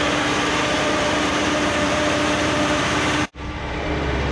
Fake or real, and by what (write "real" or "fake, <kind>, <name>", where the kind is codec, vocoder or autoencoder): fake, vocoder, BigVGAN v2